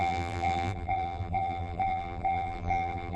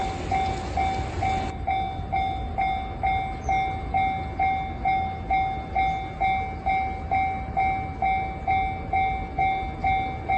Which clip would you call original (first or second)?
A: second